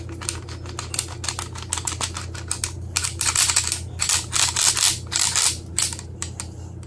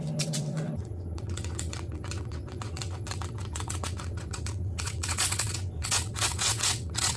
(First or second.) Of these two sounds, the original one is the first